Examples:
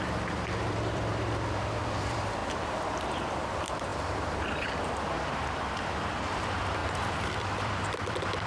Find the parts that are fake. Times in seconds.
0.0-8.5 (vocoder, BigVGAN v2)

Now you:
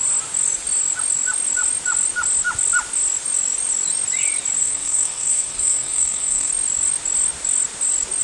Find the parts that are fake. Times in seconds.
4.6-6.5 (codec, SNAC)

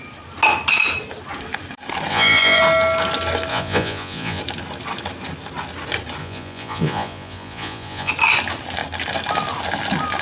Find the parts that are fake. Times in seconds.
2.1-2.6 (vocoder, Vocos); 3.5-4.4; 6.2-8.1

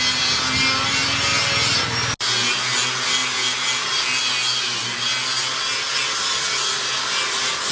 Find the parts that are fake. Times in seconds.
none